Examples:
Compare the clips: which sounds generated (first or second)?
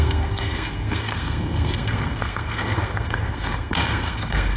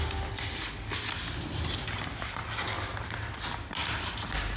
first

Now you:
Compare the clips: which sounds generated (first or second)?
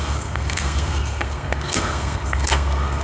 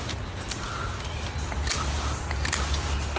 first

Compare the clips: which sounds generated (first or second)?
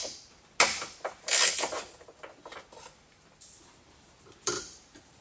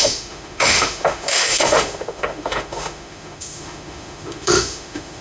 second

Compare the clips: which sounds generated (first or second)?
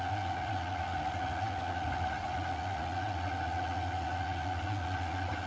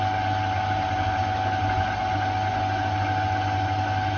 first